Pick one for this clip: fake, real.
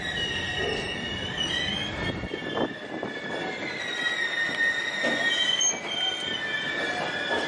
real